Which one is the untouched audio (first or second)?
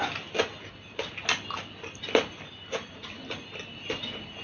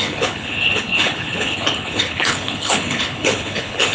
first